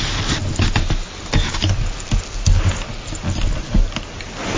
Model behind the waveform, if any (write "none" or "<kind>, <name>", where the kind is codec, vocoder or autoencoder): none